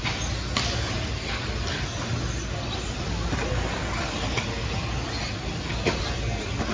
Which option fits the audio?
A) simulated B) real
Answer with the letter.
B